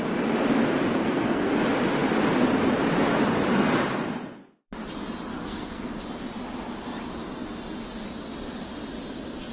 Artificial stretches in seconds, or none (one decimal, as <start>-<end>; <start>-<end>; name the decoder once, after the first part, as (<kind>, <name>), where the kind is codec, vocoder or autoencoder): 1.0-1.5 (codec, SNAC); 5.3-5.9